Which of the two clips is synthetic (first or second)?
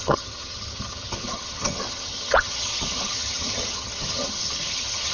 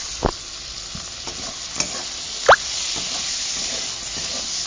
first